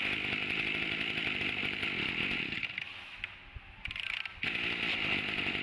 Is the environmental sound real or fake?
real